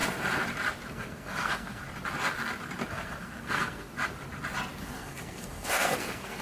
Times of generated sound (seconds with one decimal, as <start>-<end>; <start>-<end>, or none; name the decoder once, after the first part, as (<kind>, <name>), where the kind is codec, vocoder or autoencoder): 0.9-1.8 (codec, SNAC); 2.9-3.9; 4.8-6.4